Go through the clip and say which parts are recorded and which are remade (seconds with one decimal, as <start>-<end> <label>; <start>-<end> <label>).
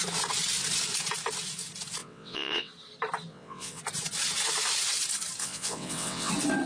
0.0-2.0 recorded; 2.0-2.7 remade; 2.7-3.3 recorded; 3.3-3.8 remade; 3.8-5.4 recorded; 5.4-6.3 remade; 6.3-6.7 recorded